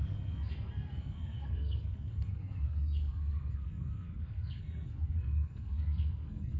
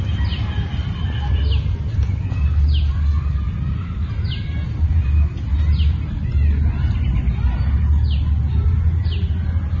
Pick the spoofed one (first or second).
first